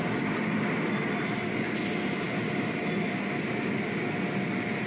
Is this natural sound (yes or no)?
yes